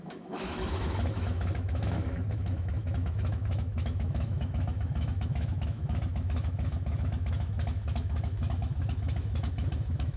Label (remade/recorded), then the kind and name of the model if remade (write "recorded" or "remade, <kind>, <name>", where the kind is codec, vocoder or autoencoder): remade, autoencoder, DAC-VAE